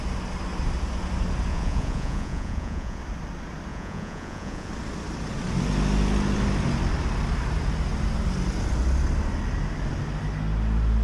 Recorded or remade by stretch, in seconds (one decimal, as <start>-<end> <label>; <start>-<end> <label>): 0.0-1.5 recorded; 1.5-3.0 remade; 3.0-3.7 recorded; 3.7-4.7 remade; 4.7-11.0 recorded